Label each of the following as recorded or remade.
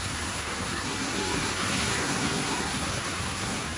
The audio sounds remade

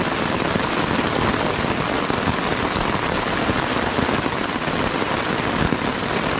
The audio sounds recorded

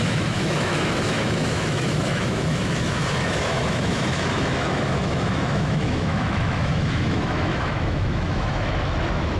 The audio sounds remade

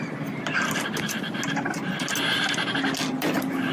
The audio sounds recorded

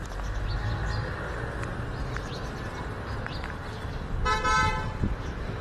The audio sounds recorded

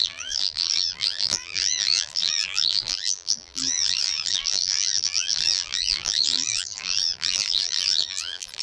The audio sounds remade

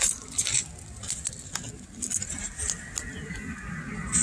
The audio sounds recorded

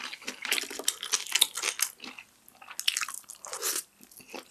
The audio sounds recorded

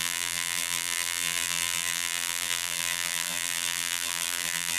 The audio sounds remade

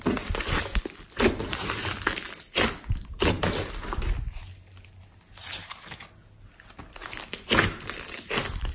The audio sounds recorded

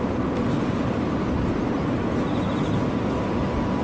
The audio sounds recorded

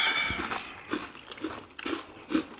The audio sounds recorded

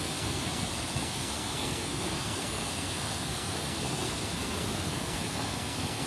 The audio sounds remade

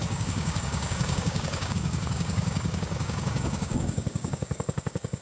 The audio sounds remade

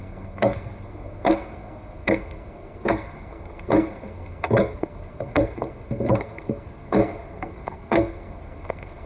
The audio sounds remade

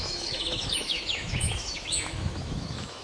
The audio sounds remade